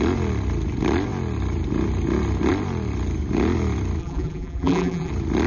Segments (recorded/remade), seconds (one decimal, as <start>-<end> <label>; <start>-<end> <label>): 0.0-4.0 recorded; 4.0-5.1 remade; 5.1-5.5 recorded